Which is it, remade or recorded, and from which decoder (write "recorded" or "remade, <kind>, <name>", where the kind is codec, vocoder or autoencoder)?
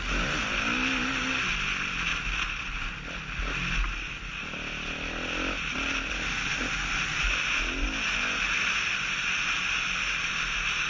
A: recorded